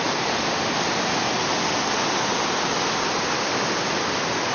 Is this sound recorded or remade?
recorded